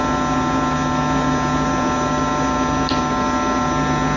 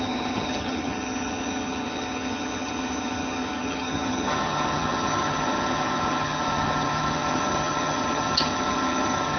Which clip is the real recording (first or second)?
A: first